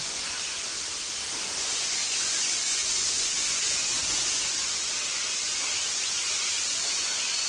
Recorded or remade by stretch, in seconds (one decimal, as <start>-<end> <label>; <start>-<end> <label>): 0.0-0.7 remade; 0.7-1.4 recorded; 1.4-7.5 remade